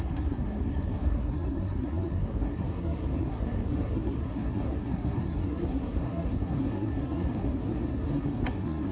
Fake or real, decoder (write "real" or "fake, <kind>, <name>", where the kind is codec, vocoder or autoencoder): fake, codec, SNAC